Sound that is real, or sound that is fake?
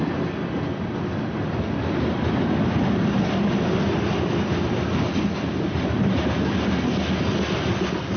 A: real